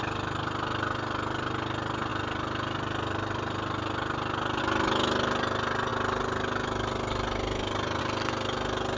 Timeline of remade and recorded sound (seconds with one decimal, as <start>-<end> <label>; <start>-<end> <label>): 0.0-9.0 recorded